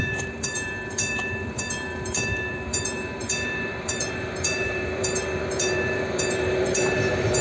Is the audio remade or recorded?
remade